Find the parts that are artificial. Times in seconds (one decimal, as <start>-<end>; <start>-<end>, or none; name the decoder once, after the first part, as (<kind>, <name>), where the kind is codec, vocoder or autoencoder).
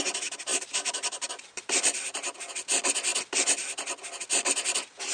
0.5-2.5 (vocoder, BigVGAN v2)